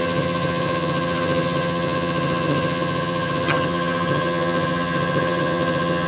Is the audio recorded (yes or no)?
no